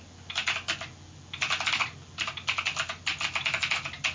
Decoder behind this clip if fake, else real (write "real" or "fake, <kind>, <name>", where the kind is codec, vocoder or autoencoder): real